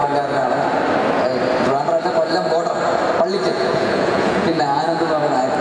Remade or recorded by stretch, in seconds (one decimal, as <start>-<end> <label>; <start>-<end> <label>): 0.0-3.5 recorded; 3.5-5.0 remade; 5.0-5.6 recorded